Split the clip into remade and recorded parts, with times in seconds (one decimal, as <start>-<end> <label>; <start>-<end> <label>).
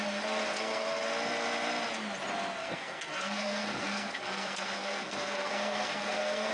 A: 0.0-0.5 recorded; 0.5-1.0 remade; 1.0-2.6 recorded; 2.6-6.5 remade